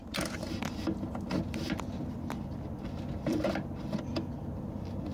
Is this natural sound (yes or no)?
yes